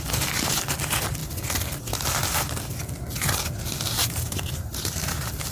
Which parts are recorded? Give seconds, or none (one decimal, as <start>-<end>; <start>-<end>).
0.0-4.0